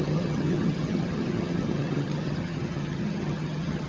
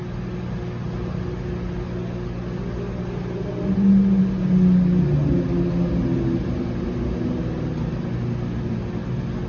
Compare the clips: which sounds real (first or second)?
second